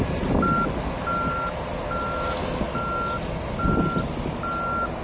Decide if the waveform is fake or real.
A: real